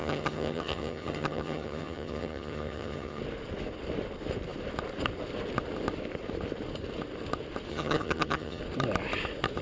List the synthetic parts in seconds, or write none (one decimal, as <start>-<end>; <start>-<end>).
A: 0.0-3.2; 7.7-8.6

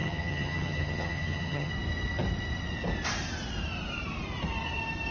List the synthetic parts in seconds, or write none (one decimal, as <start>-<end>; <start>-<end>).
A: 0.0-1.7